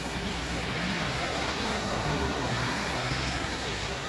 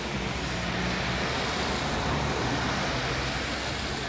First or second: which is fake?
first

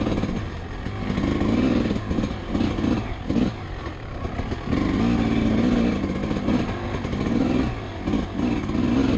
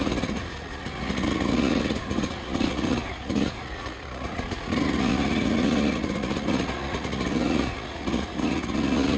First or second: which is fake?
second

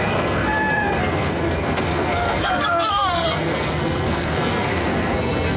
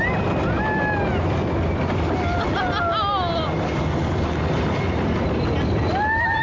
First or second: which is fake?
first